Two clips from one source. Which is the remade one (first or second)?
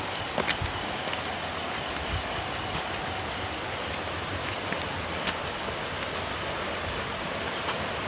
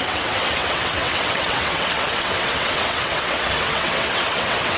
second